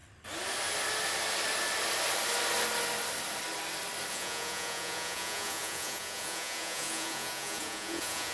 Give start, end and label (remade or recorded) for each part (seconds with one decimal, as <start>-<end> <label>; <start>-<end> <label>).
0.0-4.1 recorded; 4.1-8.3 remade